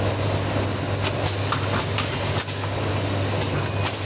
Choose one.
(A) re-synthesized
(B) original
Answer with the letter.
B